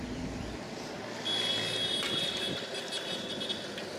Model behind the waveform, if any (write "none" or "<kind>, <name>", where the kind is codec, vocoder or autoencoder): none